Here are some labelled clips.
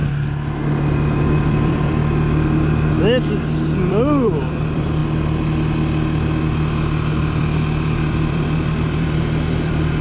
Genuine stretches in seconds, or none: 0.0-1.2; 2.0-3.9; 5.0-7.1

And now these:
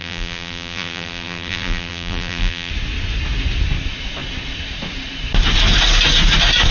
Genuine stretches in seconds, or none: 2.7-6.7

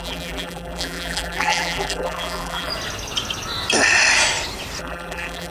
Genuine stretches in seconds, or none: 2.7-4.8

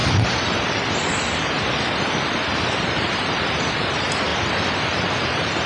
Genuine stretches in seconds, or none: 0.0-2.6; 4.3-5.1

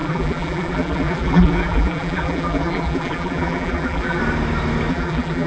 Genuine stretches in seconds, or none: 4.2-4.9